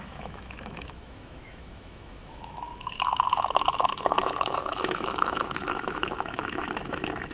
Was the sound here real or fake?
fake